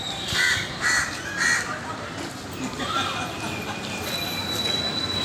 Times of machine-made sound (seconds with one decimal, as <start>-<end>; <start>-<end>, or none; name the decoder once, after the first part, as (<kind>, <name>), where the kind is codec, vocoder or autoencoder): none